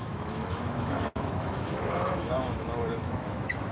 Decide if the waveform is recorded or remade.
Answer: remade